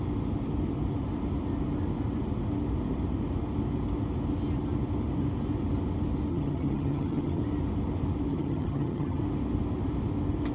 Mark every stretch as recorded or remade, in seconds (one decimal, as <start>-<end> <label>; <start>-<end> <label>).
0.0-6.3 recorded; 6.3-7.4 remade; 7.4-8.3 recorded; 8.3-9.2 remade; 9.2-10.5 recorded